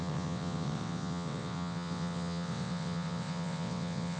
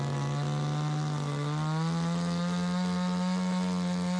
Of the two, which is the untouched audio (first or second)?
second